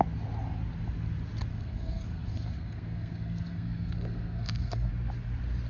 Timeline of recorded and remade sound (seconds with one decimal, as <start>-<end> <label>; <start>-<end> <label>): 0.0-1.5 recorded; 1.5-4.9 remade; 4.9-5.7 recorded